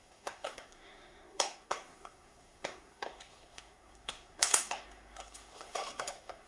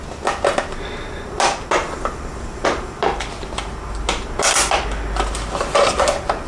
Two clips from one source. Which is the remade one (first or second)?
first